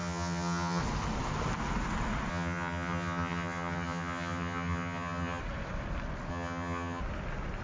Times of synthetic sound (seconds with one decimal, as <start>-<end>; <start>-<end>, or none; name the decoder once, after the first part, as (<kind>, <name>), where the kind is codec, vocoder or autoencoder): 0.0-0.8 (vocoder, HiFi-GAN); 2.3-5.4; 6.3-7.0